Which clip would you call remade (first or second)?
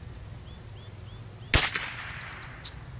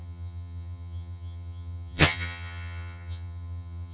second